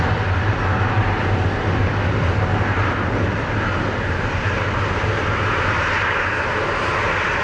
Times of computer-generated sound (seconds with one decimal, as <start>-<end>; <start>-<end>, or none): none